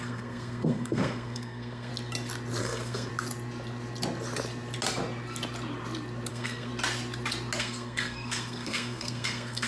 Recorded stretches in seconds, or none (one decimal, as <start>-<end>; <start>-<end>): 1.9-2.6; 3.1-6.3; 6.7-7.6